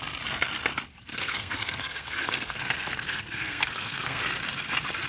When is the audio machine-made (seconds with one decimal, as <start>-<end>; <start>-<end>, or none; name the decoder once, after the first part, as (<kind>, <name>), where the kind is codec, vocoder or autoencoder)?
1.1-4.2 (codec, SNAC)